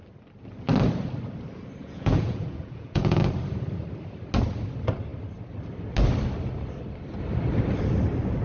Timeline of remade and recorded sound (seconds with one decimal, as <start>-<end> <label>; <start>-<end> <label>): 0.0-1.8 recorded; 1.8-3.2 remade; 3.2-8.4 recorded